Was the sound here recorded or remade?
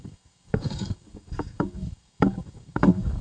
remade